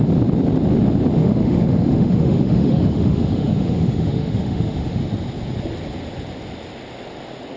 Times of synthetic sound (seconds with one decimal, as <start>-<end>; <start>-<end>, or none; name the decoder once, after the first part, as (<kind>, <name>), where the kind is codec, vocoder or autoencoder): 1.2-5.0 (autoencoder, DAC-VAE)